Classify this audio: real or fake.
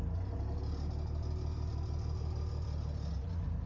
real